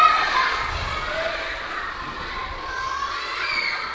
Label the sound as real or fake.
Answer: fake